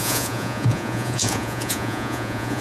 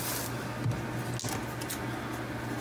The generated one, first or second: first